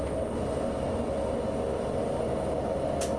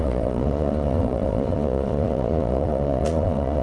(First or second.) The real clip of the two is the first